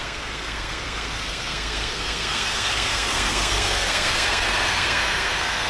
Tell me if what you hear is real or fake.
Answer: fake